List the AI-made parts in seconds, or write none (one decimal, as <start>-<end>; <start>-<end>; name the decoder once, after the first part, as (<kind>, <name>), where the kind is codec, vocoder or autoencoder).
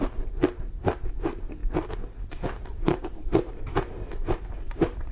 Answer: 0.0-1.6 (vocoder, BigVGAN v2); 2.3-3.3; 4.5-5.1